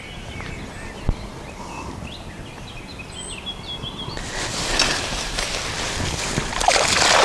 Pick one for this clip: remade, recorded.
recorded